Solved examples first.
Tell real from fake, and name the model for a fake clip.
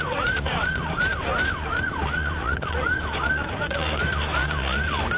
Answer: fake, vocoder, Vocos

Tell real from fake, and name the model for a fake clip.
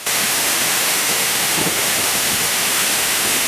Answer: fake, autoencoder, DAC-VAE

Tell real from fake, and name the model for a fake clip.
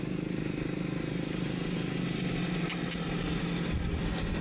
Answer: real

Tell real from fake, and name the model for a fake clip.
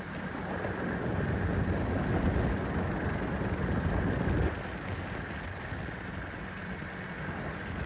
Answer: real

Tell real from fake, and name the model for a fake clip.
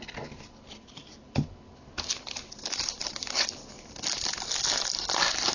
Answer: real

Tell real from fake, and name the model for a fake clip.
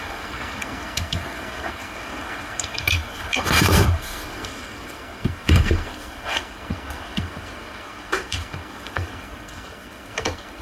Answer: fake, codec, SNAC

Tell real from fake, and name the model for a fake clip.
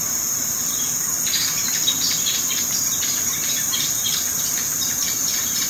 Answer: fake, vocoder, BigVGAN v2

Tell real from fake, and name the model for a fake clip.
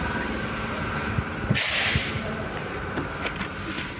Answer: fake, vocoder, BigVGAN v2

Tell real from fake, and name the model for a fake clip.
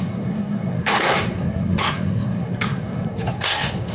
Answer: fake, codec, SNAC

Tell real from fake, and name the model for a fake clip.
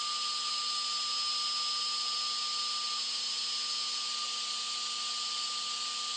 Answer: real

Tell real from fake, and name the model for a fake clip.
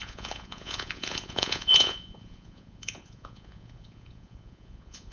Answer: fake, vocoder, Vocos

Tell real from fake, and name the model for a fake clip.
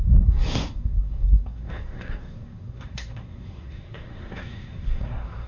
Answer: fake, codec, SNAC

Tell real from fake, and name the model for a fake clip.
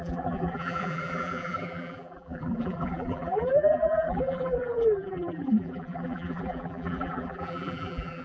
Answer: fake, vocoder, BigVGAN v2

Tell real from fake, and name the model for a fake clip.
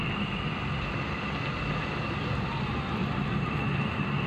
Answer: real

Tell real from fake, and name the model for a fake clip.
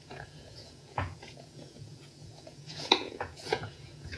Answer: fake, vocoder, Vocos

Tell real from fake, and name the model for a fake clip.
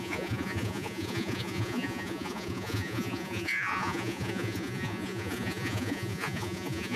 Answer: fake, vocoder, Vocos